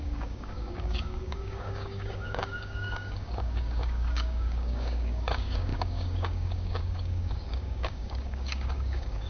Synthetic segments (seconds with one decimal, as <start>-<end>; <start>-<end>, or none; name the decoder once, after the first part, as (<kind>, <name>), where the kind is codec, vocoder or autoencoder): 0.0-9.3 (codec, DAC)